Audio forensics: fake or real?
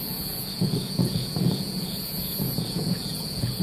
fake